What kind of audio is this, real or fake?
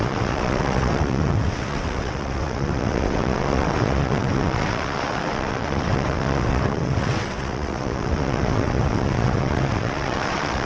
fake